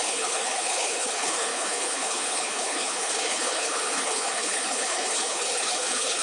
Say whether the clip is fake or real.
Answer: fake